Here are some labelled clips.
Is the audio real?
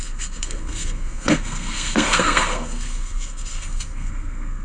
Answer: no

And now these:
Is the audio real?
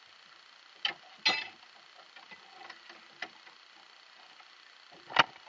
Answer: yes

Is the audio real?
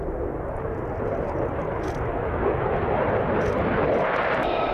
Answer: yes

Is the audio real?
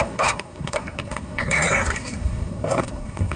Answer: no